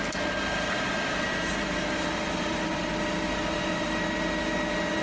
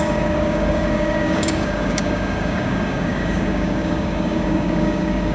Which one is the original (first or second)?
first